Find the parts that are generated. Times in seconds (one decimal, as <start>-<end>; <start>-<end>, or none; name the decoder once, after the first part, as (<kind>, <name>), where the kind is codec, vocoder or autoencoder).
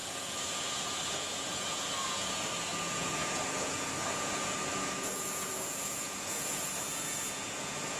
0.0-8.0 (vocoder, Vocos)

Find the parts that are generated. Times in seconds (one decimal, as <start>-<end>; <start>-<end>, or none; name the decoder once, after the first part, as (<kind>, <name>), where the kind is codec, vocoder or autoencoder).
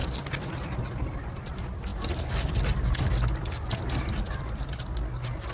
none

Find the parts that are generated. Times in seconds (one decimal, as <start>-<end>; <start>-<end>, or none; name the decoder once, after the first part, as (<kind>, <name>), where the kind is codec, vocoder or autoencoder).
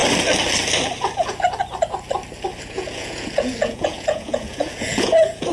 2.6-5.5 (vocoder, Vocos)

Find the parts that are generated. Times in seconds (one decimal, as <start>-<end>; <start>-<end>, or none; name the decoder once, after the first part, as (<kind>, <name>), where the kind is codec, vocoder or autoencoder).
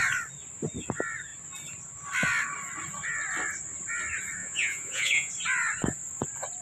4.4-5.3 (vocoder, Vocos)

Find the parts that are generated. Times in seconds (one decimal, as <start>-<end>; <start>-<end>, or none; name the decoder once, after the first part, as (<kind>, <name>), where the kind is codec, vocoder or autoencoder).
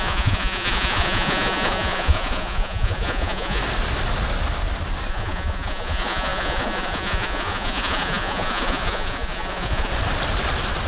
0.0-3.6 (vocoder, Vocos); 5.1-9.9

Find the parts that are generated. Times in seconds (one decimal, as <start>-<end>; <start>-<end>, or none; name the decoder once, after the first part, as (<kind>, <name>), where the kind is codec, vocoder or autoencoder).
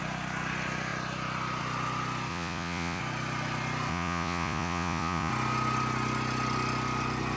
2.3-3.0 (vocoder, Vocos); 3.9-5.3